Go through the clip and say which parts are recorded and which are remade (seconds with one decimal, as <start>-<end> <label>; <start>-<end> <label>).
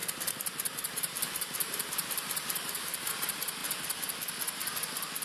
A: 0.0-3.1 remade; 3.1-5.2 recorded